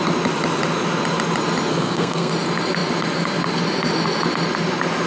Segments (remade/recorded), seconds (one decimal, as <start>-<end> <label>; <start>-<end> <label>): 0.0-1.7 recorded; 1.7-2.3 remade; 2.3-5.1 recorded